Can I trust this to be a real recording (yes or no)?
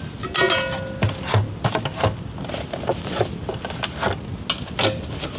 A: yes